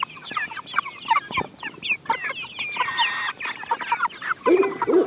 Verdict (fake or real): real